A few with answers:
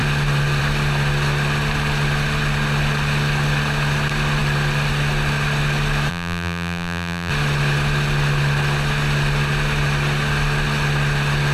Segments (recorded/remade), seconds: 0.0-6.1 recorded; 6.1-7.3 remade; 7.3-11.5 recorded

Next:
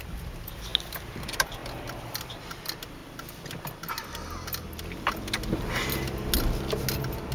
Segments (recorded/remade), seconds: 0.0-0.7 remade; 0.7-1.2 recorded; 1.2-3.0 remade; 3.0-7.3 recorded

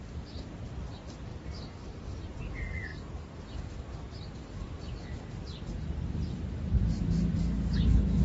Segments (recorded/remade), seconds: 0.0-1.3 recorded; 1.3-2.4 remade; 2.4-2.9 recorded; 2.9-3.4 remade; 3.4-8.2 recorded

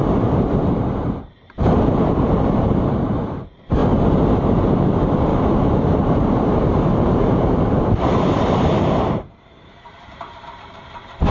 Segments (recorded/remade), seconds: 0.0-3.8 remade; 3.8-4.3 recorded; 4.3-11.3 remade

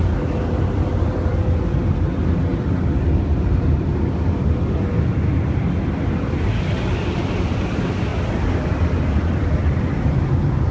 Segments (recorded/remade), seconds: 0.0-10.7 recorded

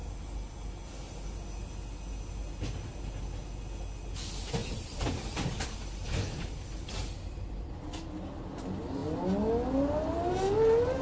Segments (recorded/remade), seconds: 0.0-4.6 recorded; 4.6-7.9 remade; 7.9-11.0 recorded